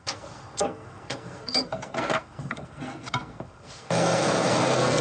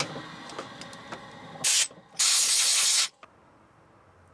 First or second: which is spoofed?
first